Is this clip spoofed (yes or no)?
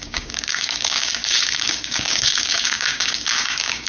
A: yes